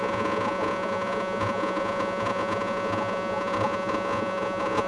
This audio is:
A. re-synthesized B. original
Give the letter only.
A